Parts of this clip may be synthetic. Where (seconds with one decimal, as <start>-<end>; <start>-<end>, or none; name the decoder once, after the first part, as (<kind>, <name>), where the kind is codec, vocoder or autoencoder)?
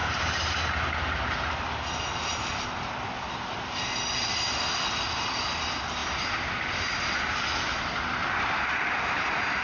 none